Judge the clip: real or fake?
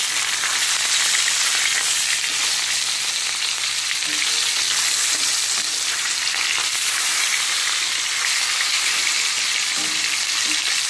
real